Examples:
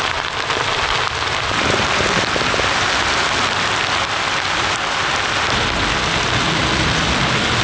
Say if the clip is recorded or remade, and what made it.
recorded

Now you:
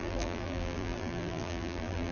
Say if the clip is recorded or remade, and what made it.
remade, vocoder, BigVGAN v2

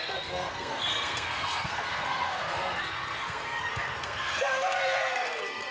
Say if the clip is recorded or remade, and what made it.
remade, codec, SNAC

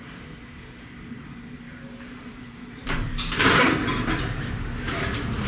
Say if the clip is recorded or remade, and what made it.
remade, vocoder, BigVGAN v2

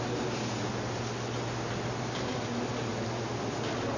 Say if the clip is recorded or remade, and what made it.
recorded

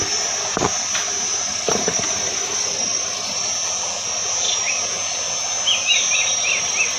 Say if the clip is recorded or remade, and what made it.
remade, vocoder, BigVGAN v2